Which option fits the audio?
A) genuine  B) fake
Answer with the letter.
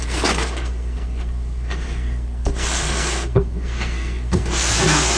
B